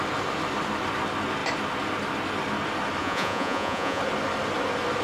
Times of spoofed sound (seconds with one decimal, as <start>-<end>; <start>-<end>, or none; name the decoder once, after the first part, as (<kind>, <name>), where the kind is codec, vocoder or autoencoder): 3.0-4.0 (vocoder, Vocos)